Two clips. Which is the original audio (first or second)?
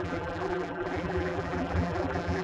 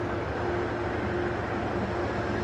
second